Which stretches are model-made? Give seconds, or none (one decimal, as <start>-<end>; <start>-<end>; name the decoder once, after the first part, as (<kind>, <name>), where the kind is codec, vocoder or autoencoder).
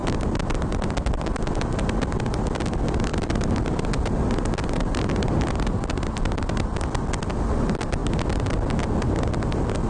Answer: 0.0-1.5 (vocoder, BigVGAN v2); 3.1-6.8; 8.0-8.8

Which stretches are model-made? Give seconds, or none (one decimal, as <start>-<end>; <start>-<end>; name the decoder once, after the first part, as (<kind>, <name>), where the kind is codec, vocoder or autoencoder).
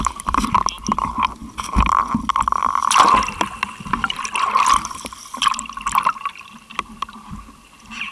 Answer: none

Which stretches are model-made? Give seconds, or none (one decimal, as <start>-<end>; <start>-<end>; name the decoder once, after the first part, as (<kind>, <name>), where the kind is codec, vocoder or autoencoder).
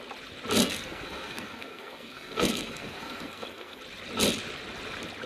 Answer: 0.6-3.8 (codec, SNAC)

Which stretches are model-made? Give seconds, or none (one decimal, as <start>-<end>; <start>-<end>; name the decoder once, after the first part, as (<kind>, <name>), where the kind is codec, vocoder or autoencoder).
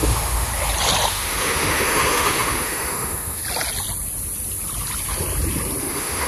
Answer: 0.0-0.5 (autoencoder, DAC-VAE); 1.1-3.4; 5.8-6.3